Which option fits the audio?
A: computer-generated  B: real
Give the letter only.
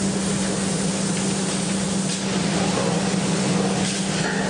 B